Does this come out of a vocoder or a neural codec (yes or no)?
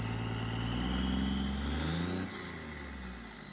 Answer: no